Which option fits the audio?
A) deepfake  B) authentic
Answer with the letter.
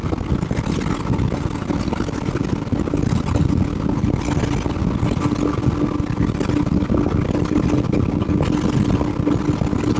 B